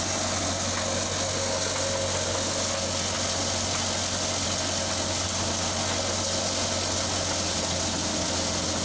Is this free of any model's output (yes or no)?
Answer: yes